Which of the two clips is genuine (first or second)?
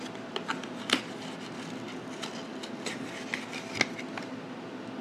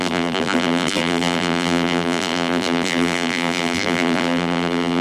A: first